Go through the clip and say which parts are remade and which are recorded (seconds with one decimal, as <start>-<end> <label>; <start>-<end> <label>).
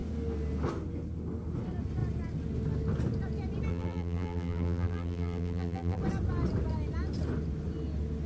0.0-3.7 recorded; 3.7-6.0 remade; 6.0-8.3 recorded